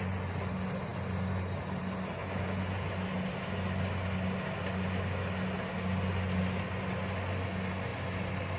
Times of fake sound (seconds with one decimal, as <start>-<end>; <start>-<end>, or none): 2.2-2.9